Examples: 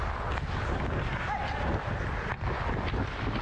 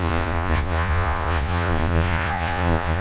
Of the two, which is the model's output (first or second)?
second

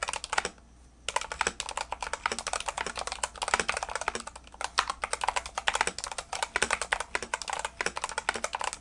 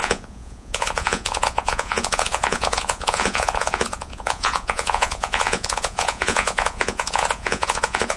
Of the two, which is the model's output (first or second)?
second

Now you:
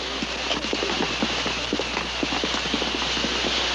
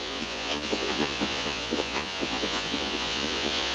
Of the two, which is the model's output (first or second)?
second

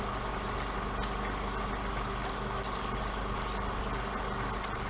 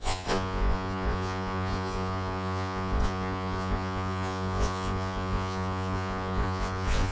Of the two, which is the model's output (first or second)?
second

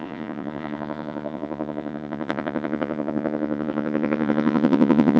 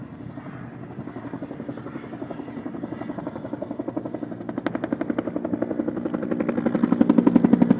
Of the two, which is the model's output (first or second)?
first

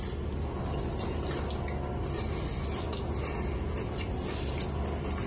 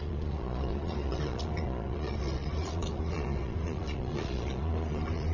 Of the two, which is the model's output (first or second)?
second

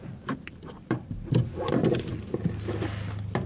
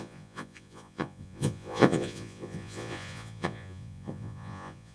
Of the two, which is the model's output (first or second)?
second